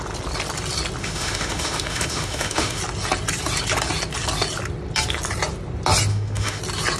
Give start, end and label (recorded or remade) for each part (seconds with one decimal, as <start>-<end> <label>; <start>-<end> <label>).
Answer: 0.0-1.0 recorded; 1.0-2.8 remade; 2.8-6.1 recorded; 6.1-6.6 remade; 6.6-7.0 recorded